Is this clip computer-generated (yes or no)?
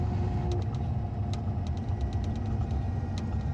no